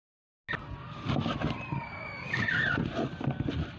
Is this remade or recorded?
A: recorded